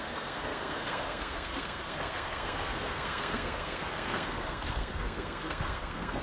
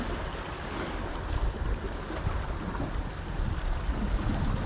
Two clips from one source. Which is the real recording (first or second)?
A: second